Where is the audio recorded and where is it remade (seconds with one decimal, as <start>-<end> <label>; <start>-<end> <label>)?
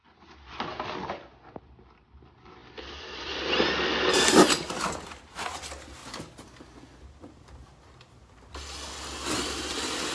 0.0-10.1 recorded